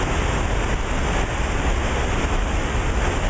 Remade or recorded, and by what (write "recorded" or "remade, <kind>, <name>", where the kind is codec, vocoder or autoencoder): recorded